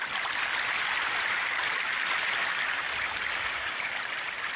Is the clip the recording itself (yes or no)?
yes